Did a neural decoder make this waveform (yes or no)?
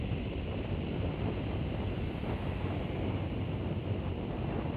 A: yes